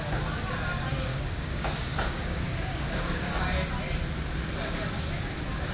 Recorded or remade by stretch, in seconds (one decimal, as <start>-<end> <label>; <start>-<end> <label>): 0.0-1.1 recorded; 1.1-3.4 remade; 3.4-5.7 recorded